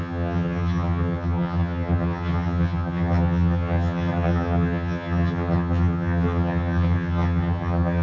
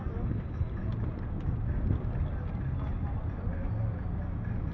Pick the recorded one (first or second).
second